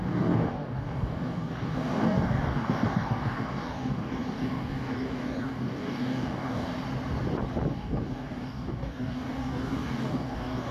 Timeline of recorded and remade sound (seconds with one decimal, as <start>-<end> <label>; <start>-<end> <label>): 0.0-6.7 remade; 6.7-7.7 recorded; 7.7-10.7 remade